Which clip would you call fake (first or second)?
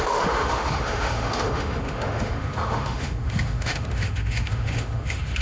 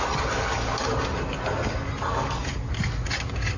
first